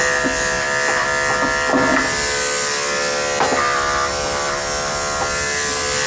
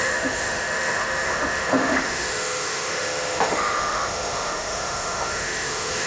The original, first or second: first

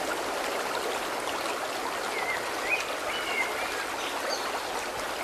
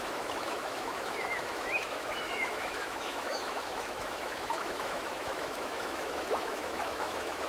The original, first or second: first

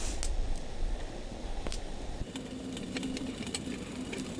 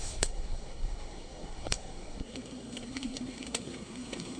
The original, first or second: first